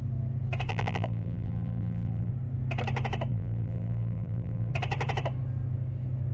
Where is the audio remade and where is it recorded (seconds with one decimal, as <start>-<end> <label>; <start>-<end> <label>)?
0.0-0.7 recorded; 0.7-2.3 remade; 2.3-3.3 recorded; 3.3-4.7 remade; 4.7-6.3 recorded